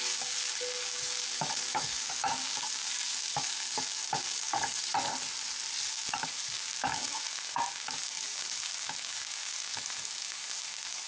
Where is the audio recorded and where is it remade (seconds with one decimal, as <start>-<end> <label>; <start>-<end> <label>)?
0.0-4.9 remade; 4.9-5.9 recorded; 5.9-11.1 remade

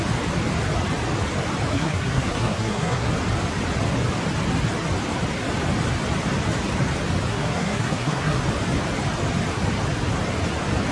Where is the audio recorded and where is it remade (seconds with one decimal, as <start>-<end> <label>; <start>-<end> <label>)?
0.0-1.7 recorded; 1.7-3.1 remade; 3.1-7.3 recorded; 7.3-8.4 remade; 8.4-10.9 recorded

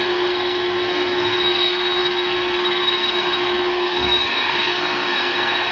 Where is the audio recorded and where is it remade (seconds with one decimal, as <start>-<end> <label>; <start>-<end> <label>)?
0.0-5.7 remade

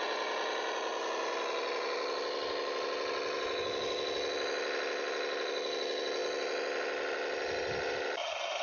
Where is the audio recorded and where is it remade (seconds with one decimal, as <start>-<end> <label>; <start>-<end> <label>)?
0.0-8.6 recorded

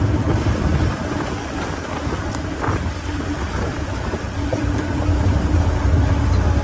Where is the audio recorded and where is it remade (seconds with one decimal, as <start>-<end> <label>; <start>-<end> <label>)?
0.0-3.5 recorded; 3.5-5.0 remade; 5.0-6.6 recorded

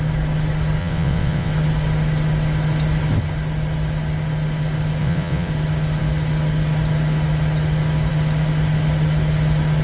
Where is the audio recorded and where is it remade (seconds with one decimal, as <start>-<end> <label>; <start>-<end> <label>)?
0.0-0.8 recorded; 0.8-1.5 remade; 1.5-5.0 recorded; 5.0-5.5 remade; 5.5-9.8 recorded

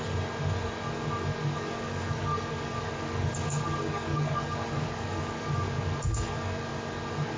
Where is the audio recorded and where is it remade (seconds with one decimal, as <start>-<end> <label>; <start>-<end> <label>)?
0.0-1.3 recorded; 1.3-5.7 remade; 5.7-7.4 recorded

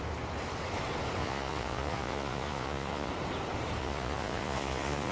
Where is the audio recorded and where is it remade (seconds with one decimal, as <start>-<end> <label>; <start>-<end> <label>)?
0.0-1.2 recorded; 1.2-3.1 remade; 3.1-3.8 recorded; 3.8-5.1 remade